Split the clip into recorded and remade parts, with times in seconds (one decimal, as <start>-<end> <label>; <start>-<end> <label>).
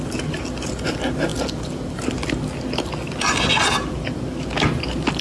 0.0-5.2 recorded